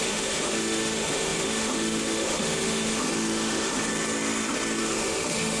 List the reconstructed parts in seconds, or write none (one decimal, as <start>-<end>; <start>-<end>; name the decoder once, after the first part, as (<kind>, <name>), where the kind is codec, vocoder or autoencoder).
0.0-3.9 (autoencoder, DAC-VAE); 4.8-5.6